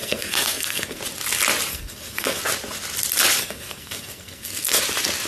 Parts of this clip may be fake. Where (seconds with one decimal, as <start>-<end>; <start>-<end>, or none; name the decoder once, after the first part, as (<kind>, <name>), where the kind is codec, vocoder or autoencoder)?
0.0-1.0 (codec, SNAC); 1.7-2.4; 3.4-4.8